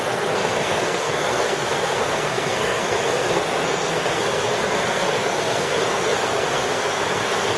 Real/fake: fake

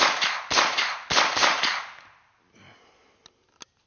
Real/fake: real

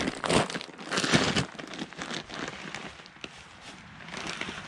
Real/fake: real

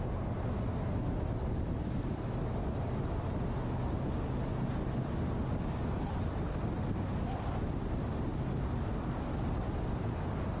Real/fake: real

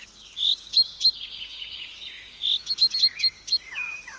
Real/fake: fake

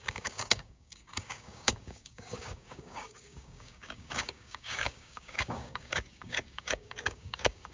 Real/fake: fake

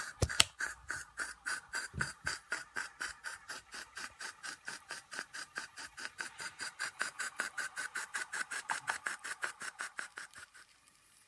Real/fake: fake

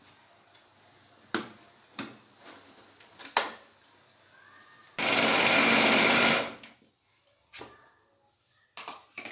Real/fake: real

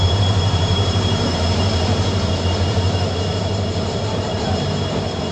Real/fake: fake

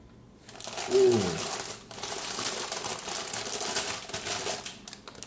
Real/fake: real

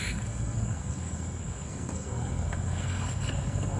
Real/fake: fake